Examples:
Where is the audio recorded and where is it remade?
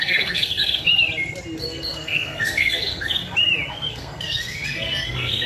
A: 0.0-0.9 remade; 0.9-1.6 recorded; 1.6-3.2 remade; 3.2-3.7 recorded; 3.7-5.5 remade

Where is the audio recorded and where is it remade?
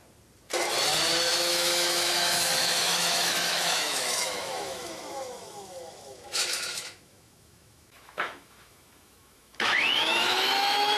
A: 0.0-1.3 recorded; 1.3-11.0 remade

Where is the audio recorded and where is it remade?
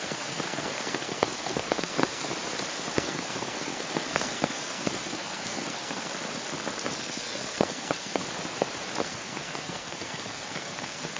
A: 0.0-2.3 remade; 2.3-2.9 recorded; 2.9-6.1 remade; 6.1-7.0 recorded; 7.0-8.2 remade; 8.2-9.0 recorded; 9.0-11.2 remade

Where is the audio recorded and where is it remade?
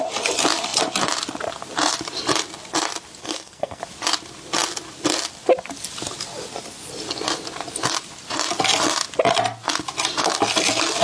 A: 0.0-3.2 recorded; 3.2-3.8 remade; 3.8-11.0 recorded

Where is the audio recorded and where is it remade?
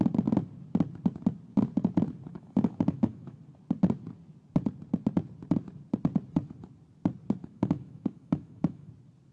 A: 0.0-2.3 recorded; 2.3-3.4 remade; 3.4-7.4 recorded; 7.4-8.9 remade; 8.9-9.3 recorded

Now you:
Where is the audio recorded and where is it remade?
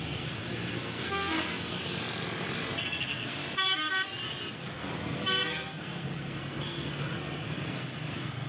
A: 0.0-1.8 remade; 1.8-2.8 recorded; 2.8-3.4 remade; 3.4-4.5 recorded; 4.5-8.5 remade